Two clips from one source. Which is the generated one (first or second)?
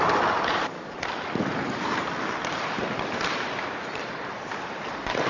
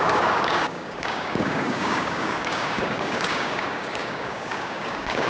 second